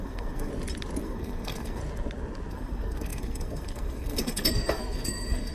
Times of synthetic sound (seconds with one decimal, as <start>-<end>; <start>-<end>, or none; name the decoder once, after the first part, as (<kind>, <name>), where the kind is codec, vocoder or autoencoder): 0.0-0.5 (codec, SNAC); 1.0-1.8; 2.5-5.5